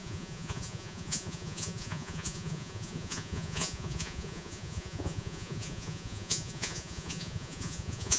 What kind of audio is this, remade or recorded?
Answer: remade